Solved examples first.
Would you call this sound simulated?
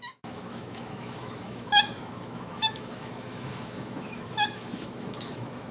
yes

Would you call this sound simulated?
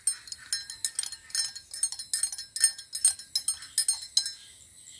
no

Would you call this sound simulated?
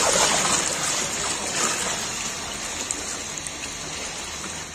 no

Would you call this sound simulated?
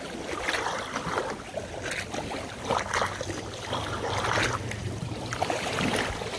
no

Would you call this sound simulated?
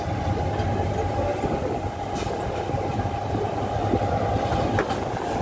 no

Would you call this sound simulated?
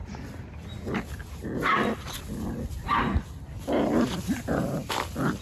no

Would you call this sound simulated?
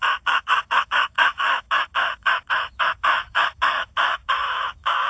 yes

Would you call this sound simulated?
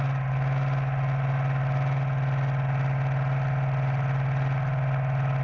no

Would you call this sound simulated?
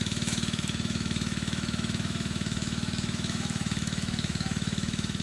yes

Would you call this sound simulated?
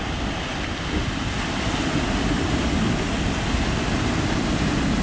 no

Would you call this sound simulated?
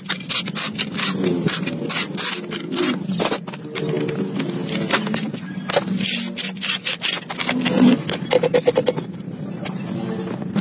no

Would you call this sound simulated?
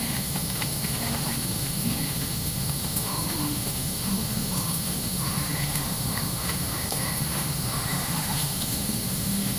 yes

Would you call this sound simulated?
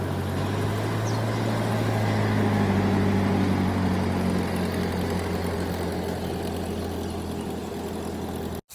no